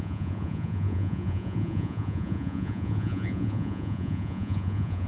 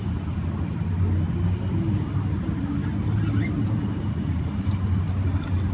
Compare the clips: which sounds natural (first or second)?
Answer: second